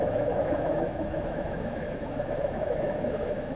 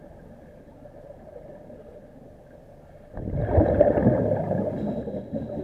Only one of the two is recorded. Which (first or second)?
second